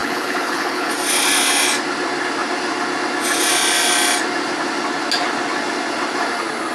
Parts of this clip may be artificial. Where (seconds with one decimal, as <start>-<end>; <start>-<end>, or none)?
0.0-0.9